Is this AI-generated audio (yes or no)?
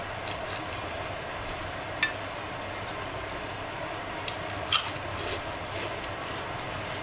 no